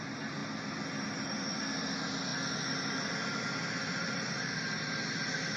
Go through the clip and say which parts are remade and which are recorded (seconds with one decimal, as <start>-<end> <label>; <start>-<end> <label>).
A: 0.0-5.6 recorded